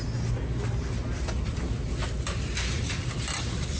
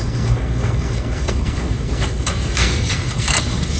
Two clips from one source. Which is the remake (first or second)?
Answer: second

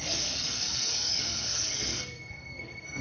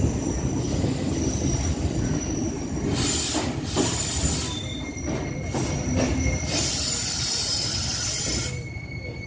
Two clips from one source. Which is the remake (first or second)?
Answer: first